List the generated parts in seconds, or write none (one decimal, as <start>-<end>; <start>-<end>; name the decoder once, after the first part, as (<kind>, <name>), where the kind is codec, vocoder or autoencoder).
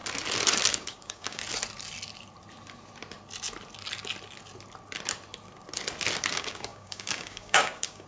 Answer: 0.7-1.4 (codec, DAC); 6.3-8.1